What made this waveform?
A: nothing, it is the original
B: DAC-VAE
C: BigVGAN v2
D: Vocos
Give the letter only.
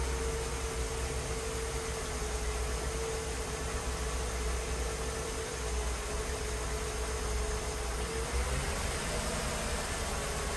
A